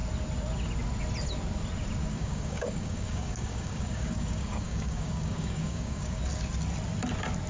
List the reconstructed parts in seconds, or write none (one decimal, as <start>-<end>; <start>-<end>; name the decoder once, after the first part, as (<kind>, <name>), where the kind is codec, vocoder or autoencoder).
2.0-6.2 (codec, DAC)